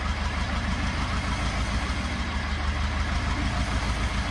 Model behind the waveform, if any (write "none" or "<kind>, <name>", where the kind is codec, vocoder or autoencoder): none